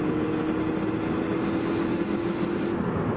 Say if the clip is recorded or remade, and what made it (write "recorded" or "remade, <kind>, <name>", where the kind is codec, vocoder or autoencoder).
recorded